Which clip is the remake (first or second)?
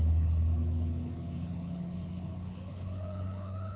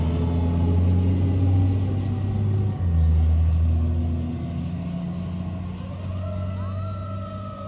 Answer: first